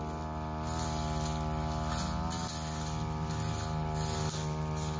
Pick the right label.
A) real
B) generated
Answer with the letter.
A